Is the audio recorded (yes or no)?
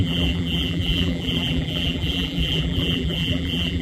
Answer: no